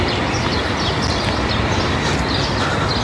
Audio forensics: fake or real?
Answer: real